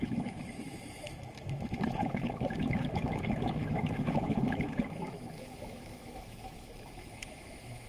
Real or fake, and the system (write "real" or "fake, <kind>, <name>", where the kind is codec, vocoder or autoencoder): fake, autoencoder, DAC-VAE